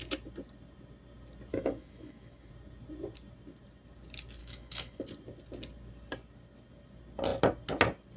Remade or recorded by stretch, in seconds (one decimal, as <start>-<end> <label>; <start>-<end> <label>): 0.0-1.5 recorded; 1.5-2.5 remade; 2.5-4.4 recorded; 4.4-5.0 remade; 5.0-8.2 recorded